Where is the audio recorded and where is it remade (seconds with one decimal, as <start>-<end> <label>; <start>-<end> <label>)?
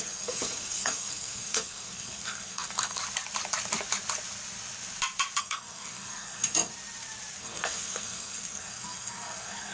0.0-3.0 remade; 3.0-5.4 recorded; 5.4-6.7 remade; 6.7-7.4 recorded; 7.4-9.7 remade